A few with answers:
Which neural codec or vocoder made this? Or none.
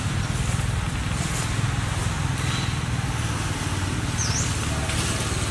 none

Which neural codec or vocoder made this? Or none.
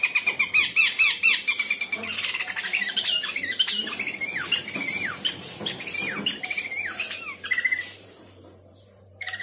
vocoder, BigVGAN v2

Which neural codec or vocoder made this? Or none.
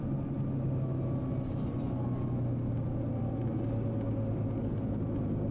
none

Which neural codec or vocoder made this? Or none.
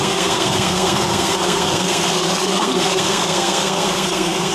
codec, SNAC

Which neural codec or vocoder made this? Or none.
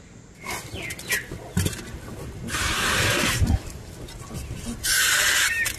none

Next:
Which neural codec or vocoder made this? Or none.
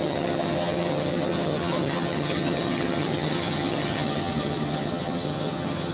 vocoder, HiFi-GAN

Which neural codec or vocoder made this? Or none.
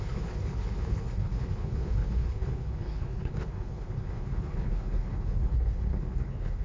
codec, HILCodec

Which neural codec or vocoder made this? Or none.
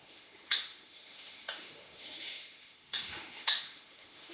autoencoder, DAC-VAE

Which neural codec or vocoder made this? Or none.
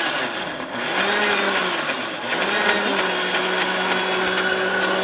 none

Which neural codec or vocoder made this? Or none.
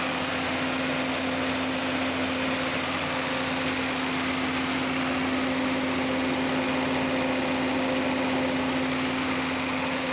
none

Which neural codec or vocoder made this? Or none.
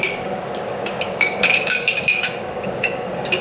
codec, DAC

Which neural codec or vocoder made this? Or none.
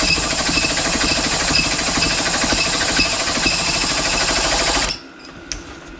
none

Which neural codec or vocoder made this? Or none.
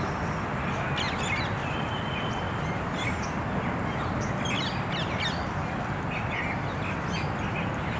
none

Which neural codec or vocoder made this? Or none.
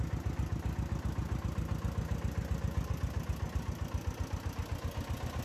none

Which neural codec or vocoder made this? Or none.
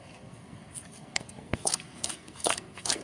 codec, SNAC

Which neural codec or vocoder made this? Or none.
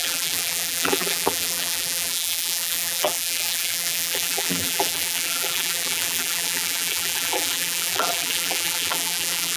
vocoder, BigVGAN v2